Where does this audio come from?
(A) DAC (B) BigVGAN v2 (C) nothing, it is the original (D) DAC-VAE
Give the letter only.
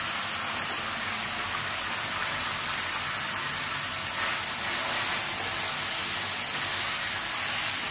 C